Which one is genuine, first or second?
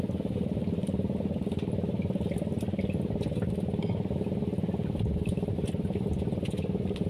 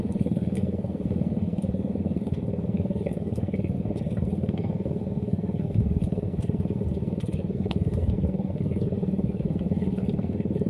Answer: first